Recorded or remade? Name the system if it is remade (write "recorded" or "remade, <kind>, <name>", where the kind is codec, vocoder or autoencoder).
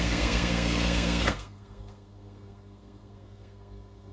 remade, codec, SNAC